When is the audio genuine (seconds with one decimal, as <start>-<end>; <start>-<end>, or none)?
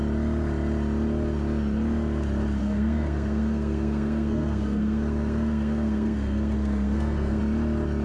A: 0.0-2.6; 7.4-8.0